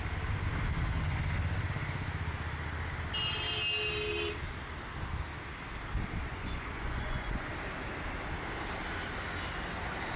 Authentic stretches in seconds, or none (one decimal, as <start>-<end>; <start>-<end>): 0.0-6.3; 7.5-10.2